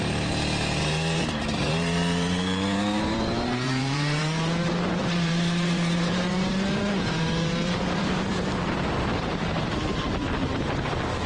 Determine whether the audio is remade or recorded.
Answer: remade